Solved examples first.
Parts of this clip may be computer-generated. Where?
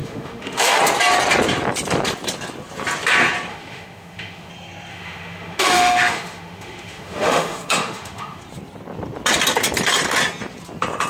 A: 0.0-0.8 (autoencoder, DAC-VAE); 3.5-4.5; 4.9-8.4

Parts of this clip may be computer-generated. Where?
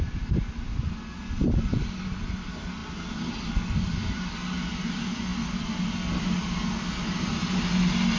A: none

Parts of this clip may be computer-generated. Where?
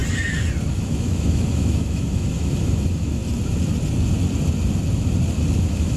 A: 0.7-3.2 (autoencoder, DAC-VAE); 5.6-6.0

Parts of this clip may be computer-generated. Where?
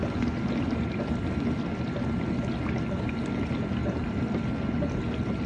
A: none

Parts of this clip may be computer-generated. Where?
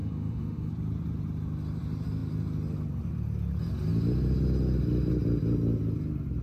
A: 0.0-0.7 (autoencoder, DAC-VAE)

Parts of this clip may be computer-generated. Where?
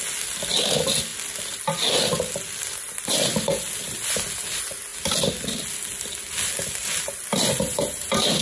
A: none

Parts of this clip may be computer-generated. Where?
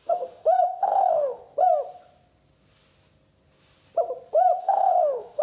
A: 0.0-1.4 (autoencoder, DAC-VAE); 4.6-5.4